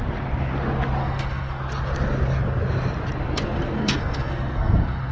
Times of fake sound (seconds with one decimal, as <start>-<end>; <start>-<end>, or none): 1.0-1.6; 3.8-5.1